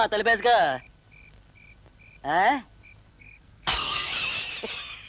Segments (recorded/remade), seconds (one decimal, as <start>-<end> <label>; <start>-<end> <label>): 0.0-3.1 recorded; 3.1-4.1 remade; 4.1-5.1 recorded